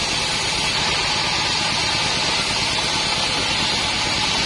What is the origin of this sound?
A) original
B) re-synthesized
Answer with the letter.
A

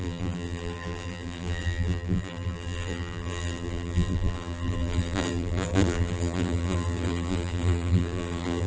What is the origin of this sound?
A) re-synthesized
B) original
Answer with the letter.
A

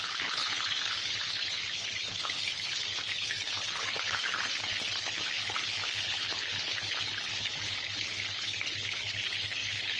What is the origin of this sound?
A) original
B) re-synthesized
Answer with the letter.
B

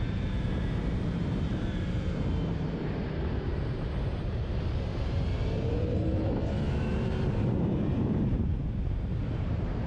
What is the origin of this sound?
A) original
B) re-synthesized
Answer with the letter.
B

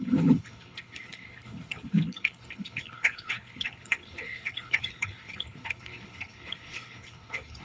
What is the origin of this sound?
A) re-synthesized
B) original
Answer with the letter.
A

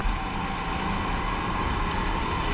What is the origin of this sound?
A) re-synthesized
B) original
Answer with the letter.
B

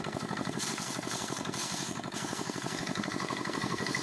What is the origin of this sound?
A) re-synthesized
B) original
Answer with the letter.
A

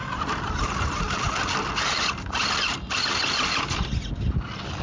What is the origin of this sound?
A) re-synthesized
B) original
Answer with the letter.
B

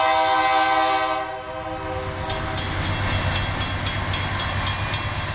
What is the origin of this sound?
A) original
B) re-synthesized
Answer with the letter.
A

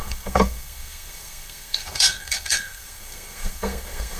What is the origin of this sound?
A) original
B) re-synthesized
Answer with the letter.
B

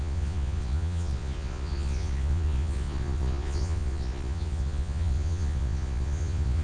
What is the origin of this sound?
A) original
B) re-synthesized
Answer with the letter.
B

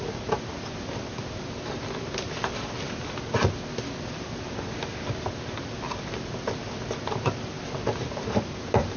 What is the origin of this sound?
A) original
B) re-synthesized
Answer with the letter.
A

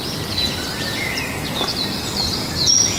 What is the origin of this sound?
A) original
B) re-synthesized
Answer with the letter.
A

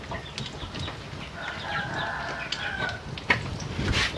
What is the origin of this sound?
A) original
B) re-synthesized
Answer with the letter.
A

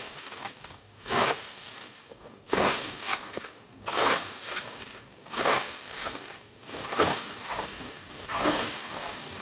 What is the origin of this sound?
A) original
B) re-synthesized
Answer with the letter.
B